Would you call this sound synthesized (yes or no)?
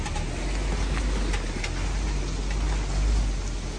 no